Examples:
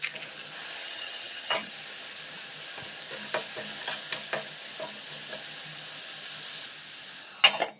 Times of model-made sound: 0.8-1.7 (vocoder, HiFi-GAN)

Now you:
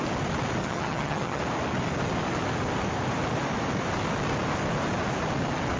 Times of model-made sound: 0.6-1.4 (vocoder, HiFi-GAN)

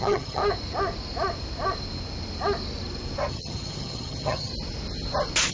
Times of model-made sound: 0.0-0.4 (vocoder, HiFi-GAN); 3.3-4.5

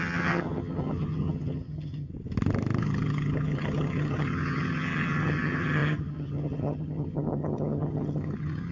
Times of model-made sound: 0.0-2.1 (vocoder, HiFi-GAN); 2.8-8.7

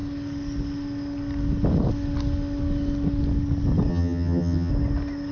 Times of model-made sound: 3.9-4.7 (vocoder, HiFi-GAN)

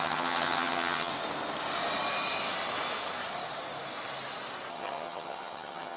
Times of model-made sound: 0.0-1.1 (vocoder, HiFi-GAN); 4.7-6.0

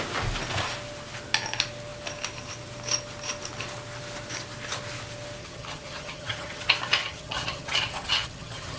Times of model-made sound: 5.4-6.6 (vocoder, HiFi-GAN); 7.0-8.8